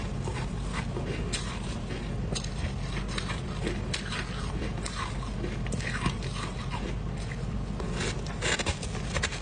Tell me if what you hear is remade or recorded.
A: recorded